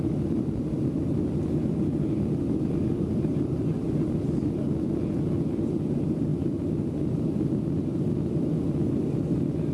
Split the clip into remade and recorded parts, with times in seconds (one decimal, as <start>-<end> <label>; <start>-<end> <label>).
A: 0.0-9.7 recorded